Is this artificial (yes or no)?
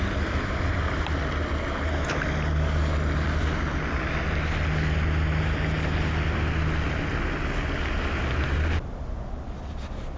no